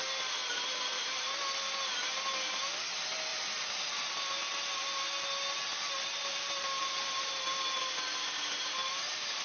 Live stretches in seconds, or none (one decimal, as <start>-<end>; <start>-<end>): 0.0-0.4; 1.3-3.3; 4.1-6.2; 7.4-9.4